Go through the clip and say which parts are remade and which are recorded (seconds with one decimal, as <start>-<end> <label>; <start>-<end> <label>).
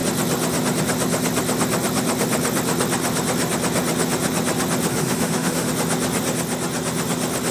0.0-4.9 recorded; 4.9-5.7 remade; 5.7-7.5 recorded